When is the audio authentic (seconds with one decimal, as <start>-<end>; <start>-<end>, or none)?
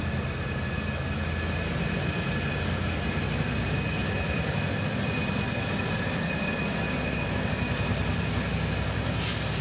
0.0-4.0; 7.5-7.9; 8.5-9.6